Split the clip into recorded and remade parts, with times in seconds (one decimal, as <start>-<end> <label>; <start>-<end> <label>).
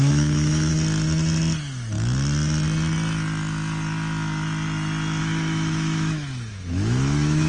0.0-0.7 remade; 0.7-5.2 recorded; 5.2-7.5 remade